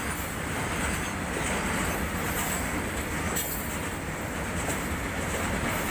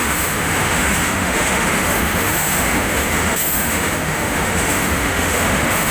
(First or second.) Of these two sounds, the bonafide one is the first